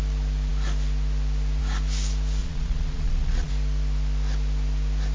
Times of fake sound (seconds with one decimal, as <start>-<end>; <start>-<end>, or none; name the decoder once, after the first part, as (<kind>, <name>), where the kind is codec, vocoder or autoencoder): 2.4-3.5 (vocoder, Vocos)